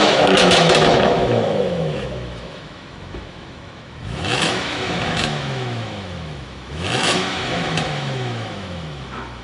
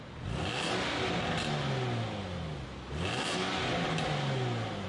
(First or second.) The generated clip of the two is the first